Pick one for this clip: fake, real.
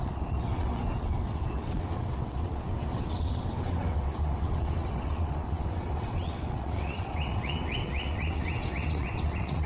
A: fake